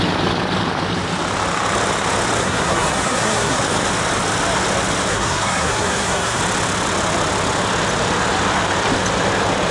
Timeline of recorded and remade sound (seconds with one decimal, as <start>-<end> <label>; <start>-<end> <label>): 0.0-2.4 recorded; 2.4-3.6 remade; 3.6-5.1 recorded; 5.1-6.4 remade; 6.4-9.7 recorded